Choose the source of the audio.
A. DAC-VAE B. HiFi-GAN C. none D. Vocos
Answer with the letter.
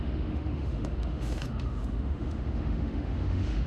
A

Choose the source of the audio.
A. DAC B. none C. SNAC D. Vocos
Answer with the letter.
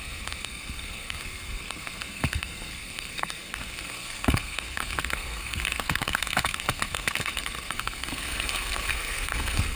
C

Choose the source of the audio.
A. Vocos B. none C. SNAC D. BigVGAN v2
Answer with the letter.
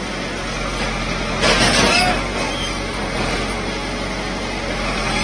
B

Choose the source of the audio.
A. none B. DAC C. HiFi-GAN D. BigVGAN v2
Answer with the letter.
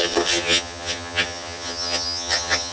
C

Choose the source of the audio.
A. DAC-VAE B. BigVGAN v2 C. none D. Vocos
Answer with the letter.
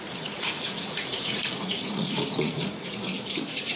D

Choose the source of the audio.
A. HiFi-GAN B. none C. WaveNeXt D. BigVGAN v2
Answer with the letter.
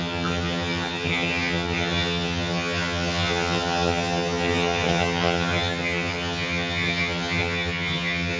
A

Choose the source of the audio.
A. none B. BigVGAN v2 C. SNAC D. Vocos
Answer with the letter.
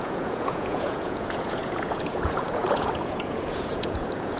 D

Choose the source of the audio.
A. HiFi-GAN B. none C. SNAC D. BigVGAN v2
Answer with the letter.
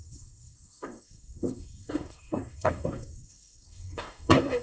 C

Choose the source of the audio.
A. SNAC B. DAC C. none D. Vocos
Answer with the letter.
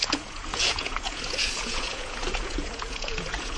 D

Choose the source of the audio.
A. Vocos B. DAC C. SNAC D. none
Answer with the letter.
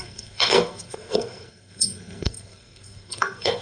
C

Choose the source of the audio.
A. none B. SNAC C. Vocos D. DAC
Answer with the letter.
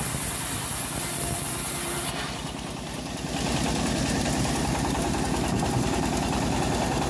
A